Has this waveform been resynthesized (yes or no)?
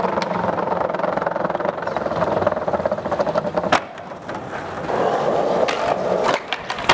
no